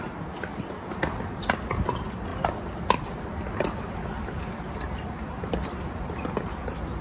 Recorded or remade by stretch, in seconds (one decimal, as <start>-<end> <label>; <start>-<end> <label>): 0.0-7.0 recorded